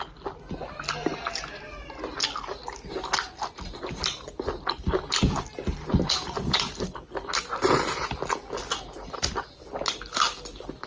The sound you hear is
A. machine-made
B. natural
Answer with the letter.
B